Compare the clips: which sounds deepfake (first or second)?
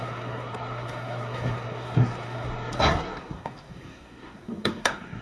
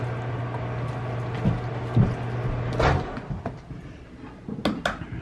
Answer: first